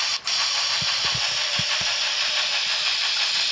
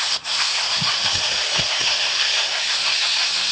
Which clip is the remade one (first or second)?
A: second